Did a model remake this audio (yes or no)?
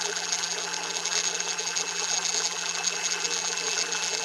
yes